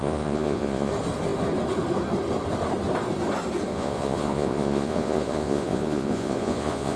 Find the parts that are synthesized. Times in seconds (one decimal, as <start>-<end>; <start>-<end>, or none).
0.0-0.9; 3.7-7.0